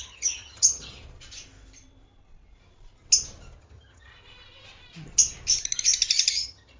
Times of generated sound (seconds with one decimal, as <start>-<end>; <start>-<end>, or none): 0.0-1.0; 3.6-4.1; 6.3-6.8